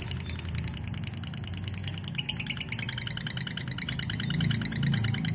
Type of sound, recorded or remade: recorded